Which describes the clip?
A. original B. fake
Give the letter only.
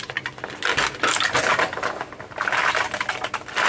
A